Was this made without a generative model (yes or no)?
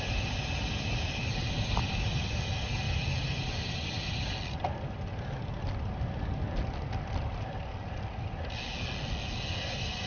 yes